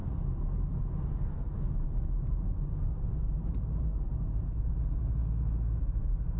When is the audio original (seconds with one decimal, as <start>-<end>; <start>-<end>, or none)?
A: 0.0-1.1; 5.2-5.8